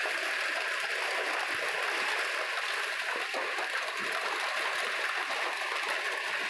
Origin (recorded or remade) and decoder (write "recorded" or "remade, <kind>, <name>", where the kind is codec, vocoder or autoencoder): recorded